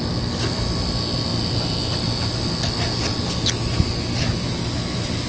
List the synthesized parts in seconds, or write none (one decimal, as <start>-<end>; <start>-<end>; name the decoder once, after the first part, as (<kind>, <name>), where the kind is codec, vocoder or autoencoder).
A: none